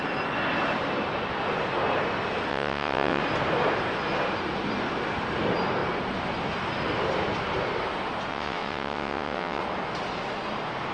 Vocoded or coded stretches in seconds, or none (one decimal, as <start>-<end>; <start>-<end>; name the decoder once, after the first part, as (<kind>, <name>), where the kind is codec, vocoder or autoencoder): 2.5-3.2 (vocoder, WaveNeXt); 8.3-9.6